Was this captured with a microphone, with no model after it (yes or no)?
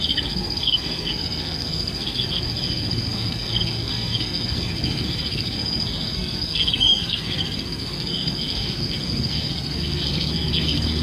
no